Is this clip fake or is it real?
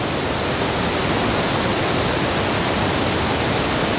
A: real